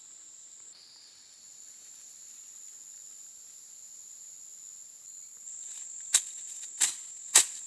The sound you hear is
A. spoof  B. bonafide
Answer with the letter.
B